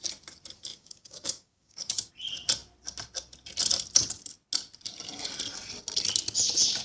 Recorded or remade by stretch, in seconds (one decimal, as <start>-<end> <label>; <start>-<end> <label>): 0.0-0.7 recorded; 0.7-2.1 remade; 2.1-6.8 recorded